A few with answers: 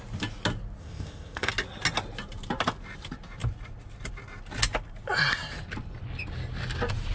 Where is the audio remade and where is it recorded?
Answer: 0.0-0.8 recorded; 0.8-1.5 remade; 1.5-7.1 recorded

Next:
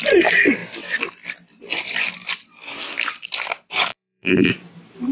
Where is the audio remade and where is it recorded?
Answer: 0.0-3.9 recorded; 3.9-4.5 remade; 4.5-5.1 recorded

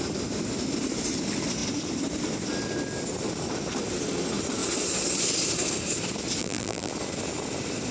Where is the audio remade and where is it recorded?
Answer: 0.0-6.4 recorded; 6.4-6.9 remade; 6.9-7.9 recorded

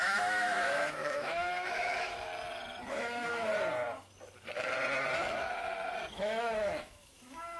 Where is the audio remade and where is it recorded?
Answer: 0.0-2.3 remade; 2.3-2.9 recorded; 2.9-3.5 remade; 3.5-6.1 recorded; 6.1-7.6 remade